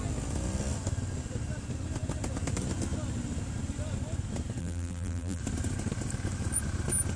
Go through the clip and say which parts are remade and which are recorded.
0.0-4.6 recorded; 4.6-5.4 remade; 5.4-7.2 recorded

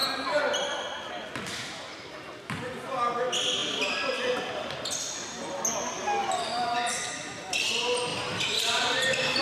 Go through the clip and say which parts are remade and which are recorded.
0.0-6.2 recorded; 6.2-7.0 remade; 7.0-8.1 recorded; 8.1-9.4 remade

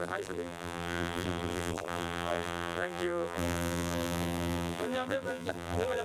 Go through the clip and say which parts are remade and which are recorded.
0.0-6.0 remade

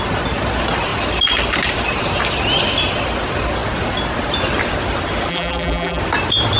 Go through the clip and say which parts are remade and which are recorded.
0.0-5.3 recorded; 5.3-6.0 remade; 6.0-6.6 recorded

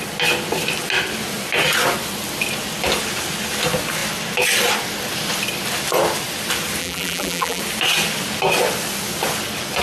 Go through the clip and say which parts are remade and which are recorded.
0.0-6.8 recorded; 6.8-7.6 remade; 7.6-9.8 recorded

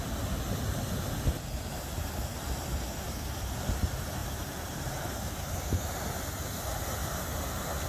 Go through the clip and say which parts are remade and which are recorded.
0.0-4.2 recorded; 4.2-5.5 remade; 5.5-7.9 recorded